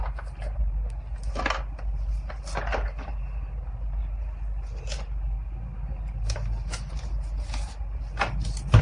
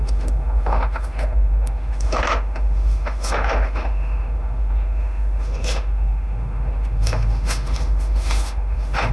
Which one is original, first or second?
first